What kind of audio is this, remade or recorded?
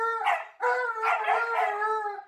recorded